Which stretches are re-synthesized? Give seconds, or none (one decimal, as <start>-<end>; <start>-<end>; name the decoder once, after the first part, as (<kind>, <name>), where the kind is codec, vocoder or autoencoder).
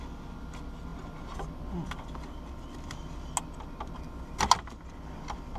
none